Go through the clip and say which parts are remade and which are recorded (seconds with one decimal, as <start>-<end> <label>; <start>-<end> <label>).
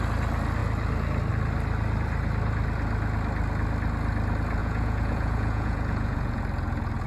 0.0-4.6 recorded; 4.6-6.4 remade; 6.4-7.1 recorded